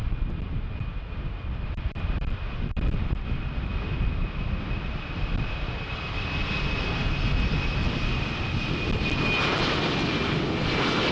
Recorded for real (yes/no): yes